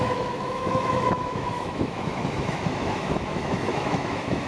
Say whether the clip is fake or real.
fake